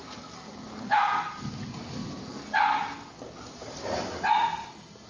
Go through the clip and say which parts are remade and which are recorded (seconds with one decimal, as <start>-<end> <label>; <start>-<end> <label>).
0.0-5.1 recorded